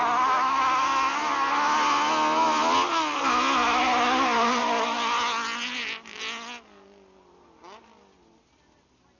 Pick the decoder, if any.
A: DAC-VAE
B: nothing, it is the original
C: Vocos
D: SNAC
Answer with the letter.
B